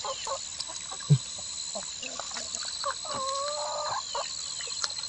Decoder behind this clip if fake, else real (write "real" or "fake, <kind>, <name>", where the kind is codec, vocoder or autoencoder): real